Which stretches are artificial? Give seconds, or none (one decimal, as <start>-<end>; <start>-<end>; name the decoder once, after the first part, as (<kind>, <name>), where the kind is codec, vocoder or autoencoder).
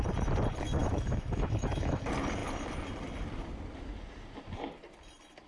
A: 0.8-2.0 (autoencoder, DAC-VAE)